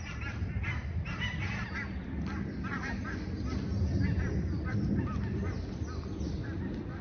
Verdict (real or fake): real